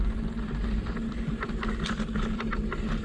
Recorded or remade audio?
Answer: recorded